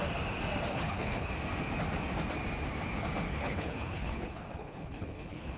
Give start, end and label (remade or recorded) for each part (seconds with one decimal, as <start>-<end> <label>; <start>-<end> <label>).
0.0-0.7 recorded; 0.7-1.3 remade; 1.3-3.3 recorded; 3.3-5.6 remade